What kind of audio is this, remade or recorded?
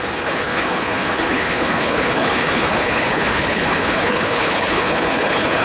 remade